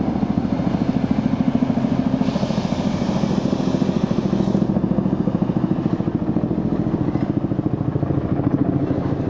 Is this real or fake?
real